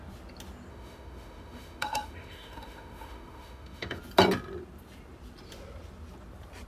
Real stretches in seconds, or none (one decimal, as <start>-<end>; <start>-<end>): 0.0-0.7; 4.0-6.7